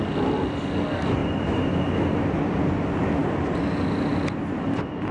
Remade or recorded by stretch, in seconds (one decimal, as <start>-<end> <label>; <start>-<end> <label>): 0.0-1.2 recorded; 1.2-1.8 remade; 1.8-5.1 recorded